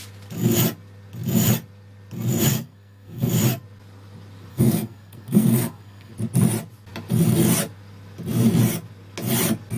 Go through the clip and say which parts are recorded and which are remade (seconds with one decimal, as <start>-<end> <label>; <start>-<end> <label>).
0.0-2.5 recorded; 2.5-3.3 remade; 3.3-4.5 recorded; 4.5-6.1 remade; 6.1-9.8 recorded